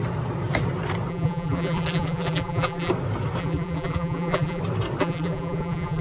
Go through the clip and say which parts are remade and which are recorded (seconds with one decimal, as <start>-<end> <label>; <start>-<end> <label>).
0.0-1.1 recorded; 1.1-2.9 remade; 2.9-3.4 recorded; 3.4-4.6 remade; 4.6-5.0 recorded; 5.0-6.0 remade